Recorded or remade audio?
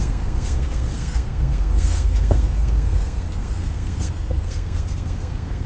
remade